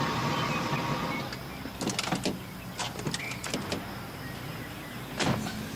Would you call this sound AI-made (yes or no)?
no